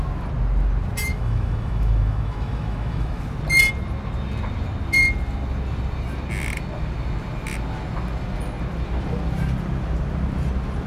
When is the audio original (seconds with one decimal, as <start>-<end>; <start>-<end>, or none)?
0.0-1.1; 3.2-10.9

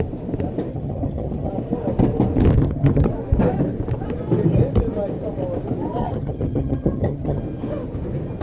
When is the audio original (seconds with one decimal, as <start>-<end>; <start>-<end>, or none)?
0.0-0.7; 1.5-2.6; 3.1-6.0; 7.4-8.4

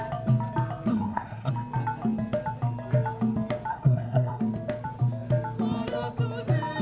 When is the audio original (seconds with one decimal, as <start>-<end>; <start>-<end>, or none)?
0.0-0.9; 1.5-3.7; 4.4-6.8